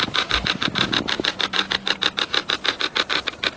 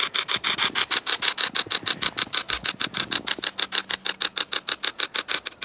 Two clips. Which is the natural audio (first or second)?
second